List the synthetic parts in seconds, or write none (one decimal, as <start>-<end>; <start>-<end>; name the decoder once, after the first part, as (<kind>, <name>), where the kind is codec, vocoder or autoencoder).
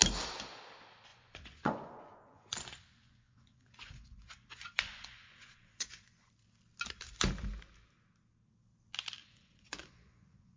1.1-6.3 (vocoder, Vocos); 9.2-10.6